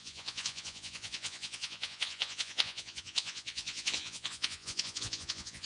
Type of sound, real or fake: fake